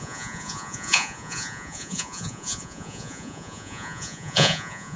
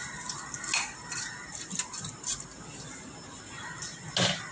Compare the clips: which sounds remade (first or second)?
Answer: first